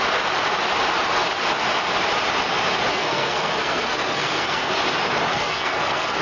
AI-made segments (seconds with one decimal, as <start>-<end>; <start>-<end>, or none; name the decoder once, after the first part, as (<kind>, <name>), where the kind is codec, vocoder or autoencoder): 2.9-4.7 (codec, SNAC); 5.3-6.2

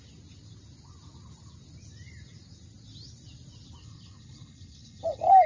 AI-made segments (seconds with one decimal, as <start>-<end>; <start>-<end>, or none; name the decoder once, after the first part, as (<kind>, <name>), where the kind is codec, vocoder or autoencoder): 3.8-5.5 (codec, HILCodec)

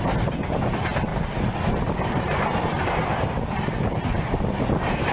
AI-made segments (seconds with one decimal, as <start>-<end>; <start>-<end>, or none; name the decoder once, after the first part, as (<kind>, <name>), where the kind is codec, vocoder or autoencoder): none

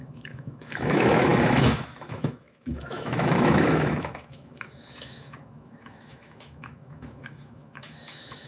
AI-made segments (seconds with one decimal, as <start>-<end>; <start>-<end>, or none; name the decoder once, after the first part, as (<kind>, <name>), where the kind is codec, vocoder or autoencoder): 0.0-8.5 (autoencoder, DAC-VAE)

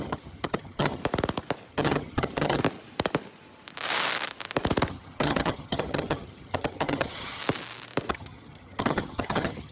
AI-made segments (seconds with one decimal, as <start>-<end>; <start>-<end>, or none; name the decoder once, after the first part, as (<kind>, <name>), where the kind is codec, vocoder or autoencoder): 0.0-1.0 (vocoder, HiFi-GAN); 1.7-2.6; 4.9-7.4; 8.1-9.7